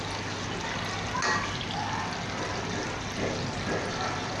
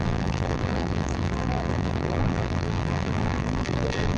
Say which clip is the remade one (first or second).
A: second